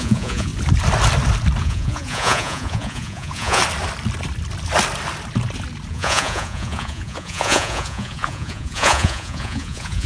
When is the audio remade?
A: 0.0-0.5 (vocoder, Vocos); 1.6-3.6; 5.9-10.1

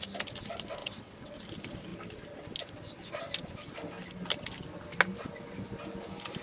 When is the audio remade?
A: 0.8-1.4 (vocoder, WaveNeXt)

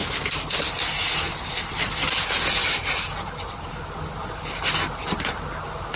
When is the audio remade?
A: 2.6-3.7 (vocoder, BigVGAN v2)